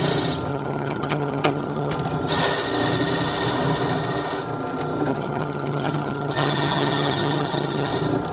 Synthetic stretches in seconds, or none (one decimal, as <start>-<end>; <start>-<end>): 0.5-1.9; 5.1-7.9